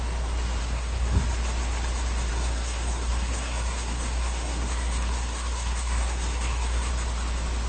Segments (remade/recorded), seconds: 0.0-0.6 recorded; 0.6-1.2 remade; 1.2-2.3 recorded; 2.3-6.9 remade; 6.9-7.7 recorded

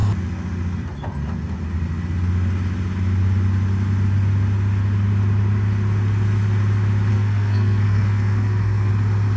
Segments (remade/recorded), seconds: 0.0-7.1 recorded; 7.1-8.9 remade; 8.9-9.4 recorded

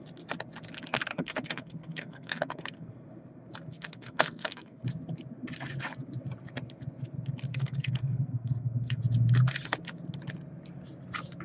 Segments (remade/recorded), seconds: 0.0-1.1 recorded; 1.1-2.9 remade; 2.9-3.7 recorded; 3.7-4.8 remade; 4.8-7.5 recorded; 7.5-9.0 remade; 9.0-11.4 recorded

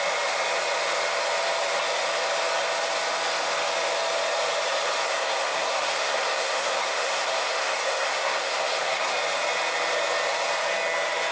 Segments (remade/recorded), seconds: 0.0-5.0 recorded; 5.0-9.1 remade; 9.1-11.3 recorded

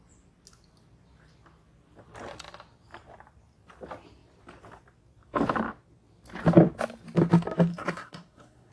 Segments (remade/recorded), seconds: 0.0-7.7 recorded; 7.7-8.7 remade

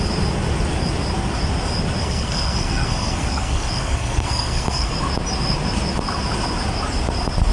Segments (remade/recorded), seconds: 0.0-2.0 recorded; 2.0-4.9 remade; 4.9-7.5 recorded

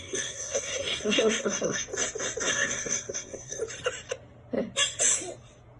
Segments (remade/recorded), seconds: 0.0-1.8 remade; 1.8-2.5 recorded; 2.5-3.6 remade; 3.6-5.8 recorded